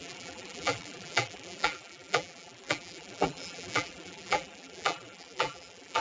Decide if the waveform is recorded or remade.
remade